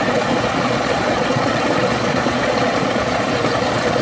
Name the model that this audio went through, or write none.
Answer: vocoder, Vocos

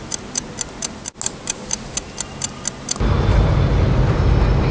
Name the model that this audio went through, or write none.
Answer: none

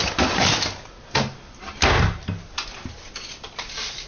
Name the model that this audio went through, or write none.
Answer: none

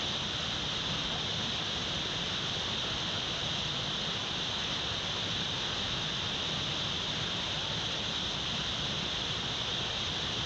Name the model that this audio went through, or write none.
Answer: none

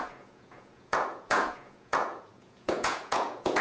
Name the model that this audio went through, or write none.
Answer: vocoder, Vocos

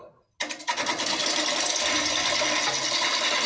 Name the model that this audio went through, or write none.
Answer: none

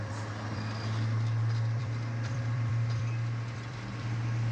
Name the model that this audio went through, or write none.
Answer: vocoder, BigVGAN v2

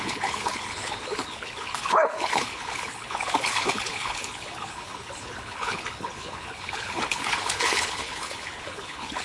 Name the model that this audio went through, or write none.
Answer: codec, HILCodec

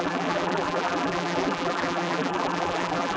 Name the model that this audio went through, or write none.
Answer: vocoder, BigVGAN v2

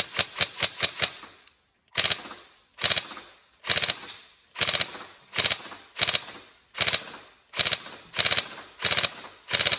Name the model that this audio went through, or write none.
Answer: none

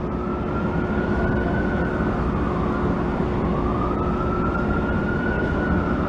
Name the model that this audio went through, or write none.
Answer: none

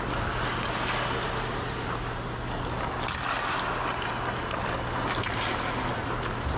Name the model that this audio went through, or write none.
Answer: none